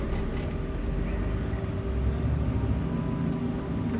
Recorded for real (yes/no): yes